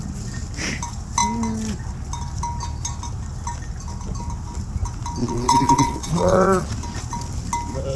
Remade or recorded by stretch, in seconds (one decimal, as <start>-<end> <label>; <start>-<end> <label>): 0.0-5.2 recorded; 5.2-6.7 remade; 6.7-8.0 recorded